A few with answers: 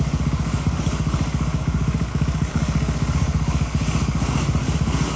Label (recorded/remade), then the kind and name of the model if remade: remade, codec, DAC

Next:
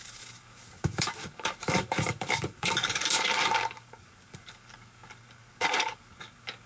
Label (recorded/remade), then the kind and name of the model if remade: remade, codec, DAC